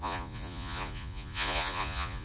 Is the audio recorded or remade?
remade